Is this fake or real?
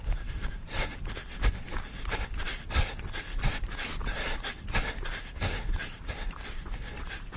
fake